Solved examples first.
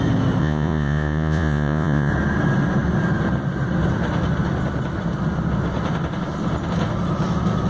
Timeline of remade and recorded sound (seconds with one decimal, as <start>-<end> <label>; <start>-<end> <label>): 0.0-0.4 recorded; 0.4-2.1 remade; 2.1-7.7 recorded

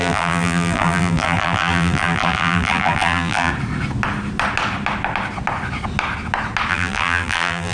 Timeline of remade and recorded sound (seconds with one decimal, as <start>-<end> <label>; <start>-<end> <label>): 0.0-3.5 remade; 3.5-6.7 recorded; 6.7-7.7 remade

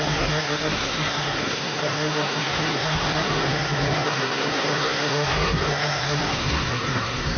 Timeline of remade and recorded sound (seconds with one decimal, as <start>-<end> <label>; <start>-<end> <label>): 0.0-7.4 remade